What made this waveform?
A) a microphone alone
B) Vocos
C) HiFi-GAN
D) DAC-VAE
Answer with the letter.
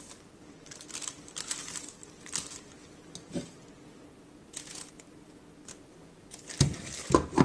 A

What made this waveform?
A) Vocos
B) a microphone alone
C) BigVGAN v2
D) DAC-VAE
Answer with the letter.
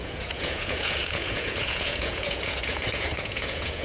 A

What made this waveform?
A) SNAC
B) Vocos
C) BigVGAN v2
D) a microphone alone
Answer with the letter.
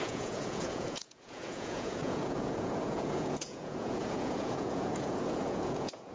B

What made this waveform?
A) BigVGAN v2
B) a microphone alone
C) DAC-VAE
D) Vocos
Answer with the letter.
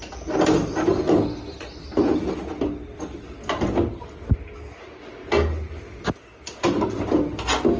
B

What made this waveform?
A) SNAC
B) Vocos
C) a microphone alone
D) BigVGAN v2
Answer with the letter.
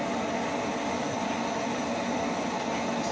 C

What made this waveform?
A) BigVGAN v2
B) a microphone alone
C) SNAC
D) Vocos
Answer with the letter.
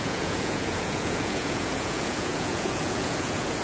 D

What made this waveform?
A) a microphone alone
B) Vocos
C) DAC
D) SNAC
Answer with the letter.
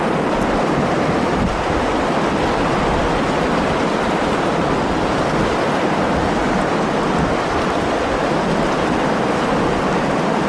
A